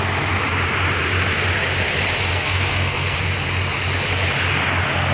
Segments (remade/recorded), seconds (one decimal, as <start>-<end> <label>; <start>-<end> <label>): 0.0-2.3 recorded; 2.3-3.2 remade; 3.2-5.1 recorded